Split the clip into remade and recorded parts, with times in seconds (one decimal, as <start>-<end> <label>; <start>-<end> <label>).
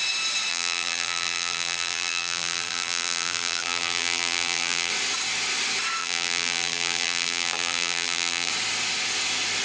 0.0-0.5 recorded; 0.5-4.9 remade; 4.9-6.0 recorded; 6.0-8.5 remade; 8.5-9.6 recorded